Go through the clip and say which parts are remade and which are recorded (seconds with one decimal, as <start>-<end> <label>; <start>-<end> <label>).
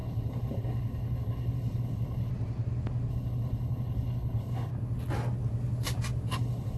0.0-2.3 remade; 2.3-3.1 recorded; 3.1-4.7 remade; 4.7-6.3 recorded; 6.3-6.8 remade